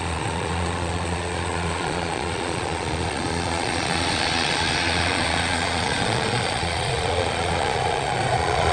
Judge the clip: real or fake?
fake